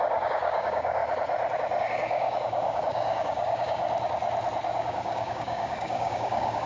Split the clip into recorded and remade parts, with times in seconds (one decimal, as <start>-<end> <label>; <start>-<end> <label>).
0.0-1.0 remade; 1.0-1.8 recorded; 1.8-3.8 remade; 3.8-4.8 recorded; 4.8-6.7 remade